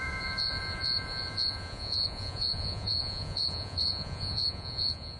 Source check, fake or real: fake